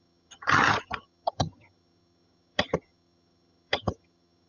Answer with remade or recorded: remade